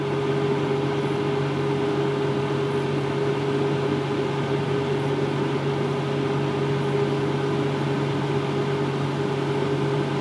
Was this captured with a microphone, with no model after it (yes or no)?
yes